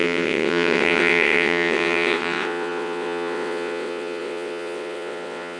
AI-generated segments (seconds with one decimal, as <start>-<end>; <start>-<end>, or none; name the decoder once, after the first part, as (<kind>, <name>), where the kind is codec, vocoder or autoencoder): 0.0-5.6 (vocoder, WaveNeXt)